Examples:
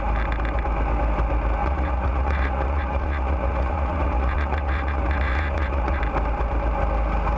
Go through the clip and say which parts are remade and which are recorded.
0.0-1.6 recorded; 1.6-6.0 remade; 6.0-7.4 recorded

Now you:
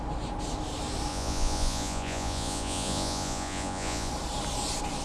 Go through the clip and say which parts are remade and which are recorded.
0.0-1.1 recorded; 1.1-4.1 remade; 4.1-5.0 recorded

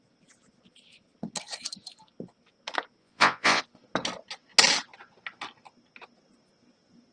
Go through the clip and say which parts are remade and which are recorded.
0.0-3.0 recorded; 3.0-3.6 remade; 3.6-7.1 recorded

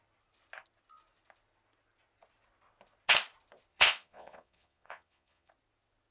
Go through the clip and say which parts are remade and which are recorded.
0.0-3.7 recorded; 3.7-5.5 remade; 5.5-6.1 recorded

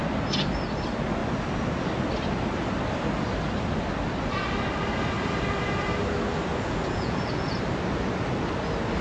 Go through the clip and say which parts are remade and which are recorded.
0.0-6.5 recorded; 6.5-7.6 remade; 7.6-9.0 recorded